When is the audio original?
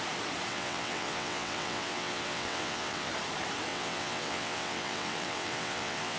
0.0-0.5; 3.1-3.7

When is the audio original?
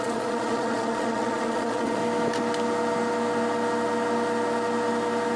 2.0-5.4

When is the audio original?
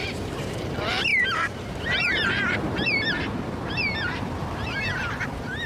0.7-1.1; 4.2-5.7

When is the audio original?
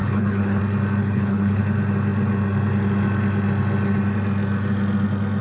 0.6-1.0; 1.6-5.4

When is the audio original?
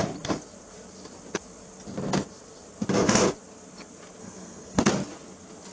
0.0-4.2; 4.8-5.7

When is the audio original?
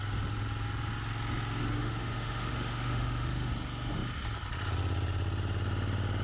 0.0-1.6; 3.5-6.2